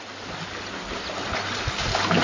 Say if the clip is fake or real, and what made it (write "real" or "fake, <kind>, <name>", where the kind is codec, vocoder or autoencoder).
real